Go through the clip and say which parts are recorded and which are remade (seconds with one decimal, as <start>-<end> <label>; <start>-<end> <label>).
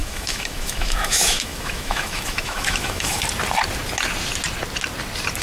0.0-3.2 remade; 3.2-5.4 recorded